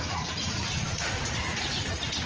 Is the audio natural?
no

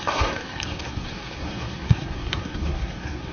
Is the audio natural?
no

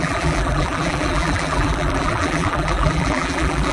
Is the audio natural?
no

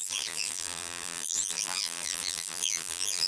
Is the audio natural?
no